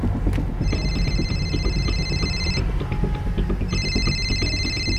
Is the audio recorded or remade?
recorded